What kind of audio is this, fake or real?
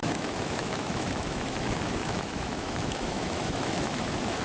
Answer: fake